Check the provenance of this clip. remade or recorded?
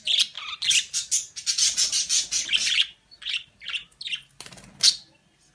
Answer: recorded